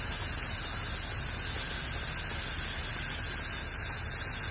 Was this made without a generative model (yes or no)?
yes